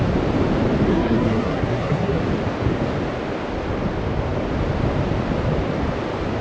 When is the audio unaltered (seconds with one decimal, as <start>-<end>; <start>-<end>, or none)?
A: 0.0-0.9; 2.2-6.4